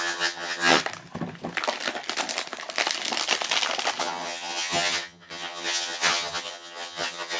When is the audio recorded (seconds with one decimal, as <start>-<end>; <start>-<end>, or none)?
0.8-4.0